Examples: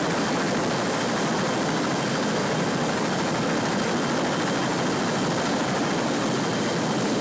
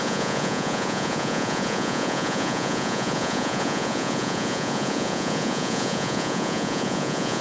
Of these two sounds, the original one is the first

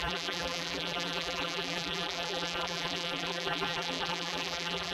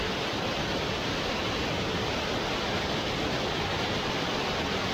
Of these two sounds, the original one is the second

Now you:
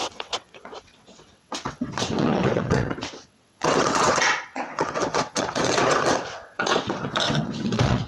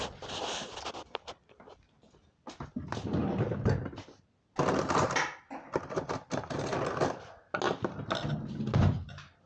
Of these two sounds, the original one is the second